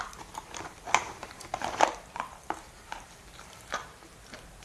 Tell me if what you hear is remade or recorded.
remade